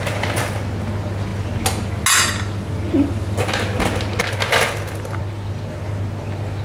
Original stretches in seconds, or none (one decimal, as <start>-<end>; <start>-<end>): 0.0-6.6